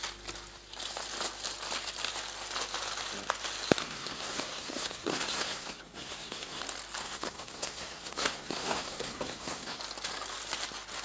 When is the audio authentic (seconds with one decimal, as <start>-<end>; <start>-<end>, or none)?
0.0-3.8; 6.6-7.0; 9.8-11.0